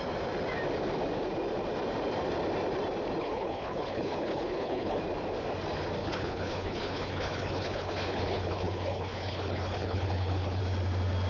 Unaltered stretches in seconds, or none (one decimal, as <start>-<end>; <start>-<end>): 0.0-3.2; 5.0-6.0; 10.6-11.3